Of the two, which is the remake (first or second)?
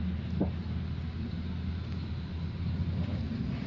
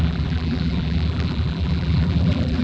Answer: second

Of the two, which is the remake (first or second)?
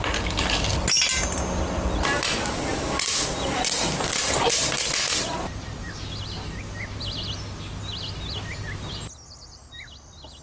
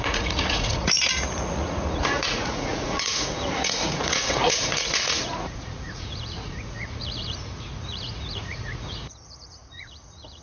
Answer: second